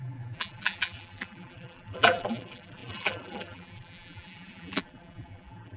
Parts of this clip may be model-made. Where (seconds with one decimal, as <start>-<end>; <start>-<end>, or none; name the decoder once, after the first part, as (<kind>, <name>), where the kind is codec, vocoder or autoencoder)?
0.0-5.8 (vocoder, BigVGAN v2)